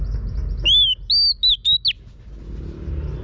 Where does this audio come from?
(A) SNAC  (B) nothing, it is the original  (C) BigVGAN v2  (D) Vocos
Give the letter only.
B